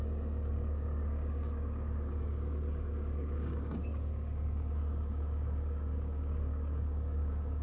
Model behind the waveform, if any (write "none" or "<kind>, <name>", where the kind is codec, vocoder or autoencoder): codec, DAC